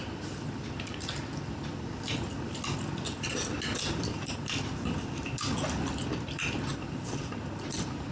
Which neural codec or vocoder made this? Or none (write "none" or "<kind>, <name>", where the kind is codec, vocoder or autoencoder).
none